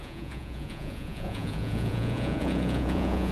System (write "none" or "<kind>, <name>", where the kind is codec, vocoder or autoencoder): vocoder, Vocos